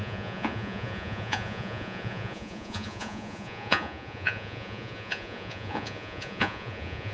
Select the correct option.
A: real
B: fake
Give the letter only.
B